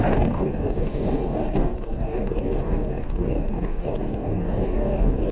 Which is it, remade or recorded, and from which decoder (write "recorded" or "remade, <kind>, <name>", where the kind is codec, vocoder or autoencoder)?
remade, codec, DAC